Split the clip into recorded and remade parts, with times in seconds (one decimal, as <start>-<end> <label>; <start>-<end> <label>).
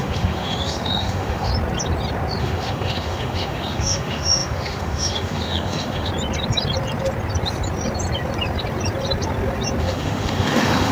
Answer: 0.0-1.5 remade; 1.5-2.4 recorded; 2.4-6.1 remade; 6.1-9.8 recorded; 9.8-10.9 remade